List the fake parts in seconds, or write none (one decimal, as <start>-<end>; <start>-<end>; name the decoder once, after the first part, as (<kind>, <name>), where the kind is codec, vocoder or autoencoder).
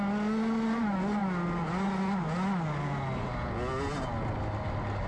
none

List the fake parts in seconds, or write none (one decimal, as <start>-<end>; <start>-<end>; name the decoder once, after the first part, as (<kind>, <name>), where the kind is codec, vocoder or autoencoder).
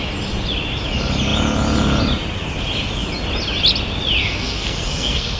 4.2-5.4 (codec, SNAC)